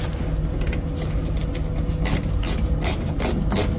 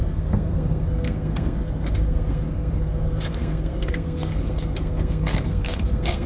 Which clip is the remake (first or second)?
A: second